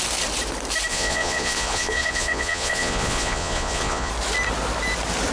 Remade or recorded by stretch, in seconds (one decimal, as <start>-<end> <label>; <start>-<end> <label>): 0.0-0.9 recorded; 0.9-4.1 remade; 4.1-5.3 recorded